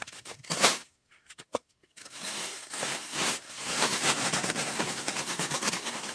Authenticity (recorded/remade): remade